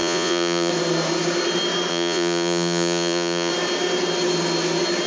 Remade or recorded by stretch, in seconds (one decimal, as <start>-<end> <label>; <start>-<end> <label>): 0.0-0.7 remade; 0.7-1.9 recorded; 1.9-3.5 remade; 3.5-5.1 recorded